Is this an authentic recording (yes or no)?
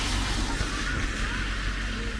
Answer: yes